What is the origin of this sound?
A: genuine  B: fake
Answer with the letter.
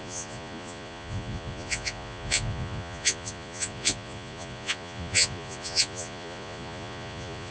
B